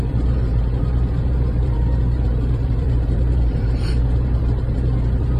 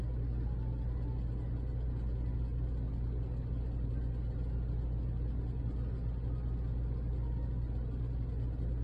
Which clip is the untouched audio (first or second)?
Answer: second